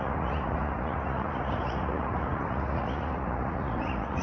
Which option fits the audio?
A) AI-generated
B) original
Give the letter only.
A